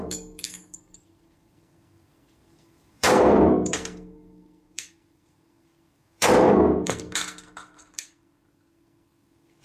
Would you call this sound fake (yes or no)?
yes